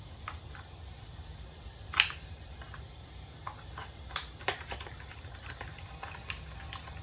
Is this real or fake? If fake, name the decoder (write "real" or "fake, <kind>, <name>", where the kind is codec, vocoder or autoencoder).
fake, vocoder, BigVGAN v2